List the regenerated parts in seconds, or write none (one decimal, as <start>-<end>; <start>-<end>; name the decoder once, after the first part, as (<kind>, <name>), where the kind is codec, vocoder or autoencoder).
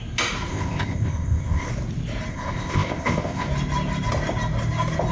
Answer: 0.5-1.7 (codec, ZipCodec); 2.3-3.5